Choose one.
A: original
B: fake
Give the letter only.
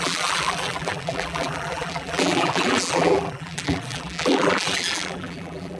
B